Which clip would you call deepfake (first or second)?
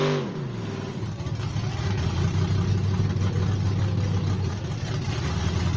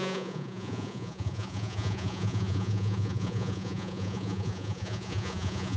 second